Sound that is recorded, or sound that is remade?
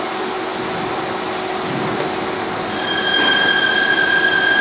recorded